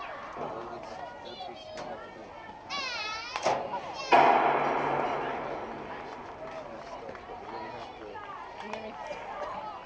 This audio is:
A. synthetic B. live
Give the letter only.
B